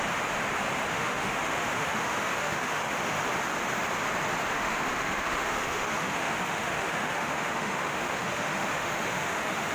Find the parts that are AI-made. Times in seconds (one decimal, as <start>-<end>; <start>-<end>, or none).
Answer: 0.9-3.2; 4.5-9.7